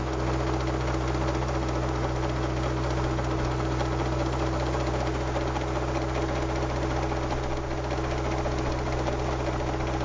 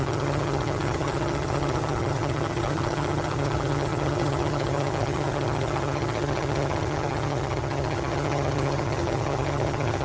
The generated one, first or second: second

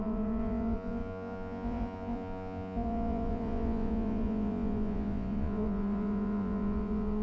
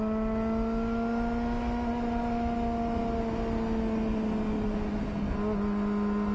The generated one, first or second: first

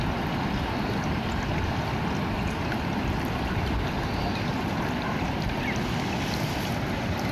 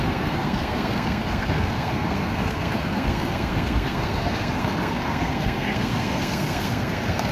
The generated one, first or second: second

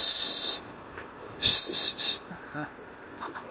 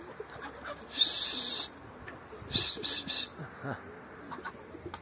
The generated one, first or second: first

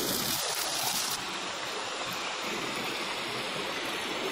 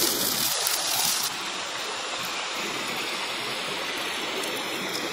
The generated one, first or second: first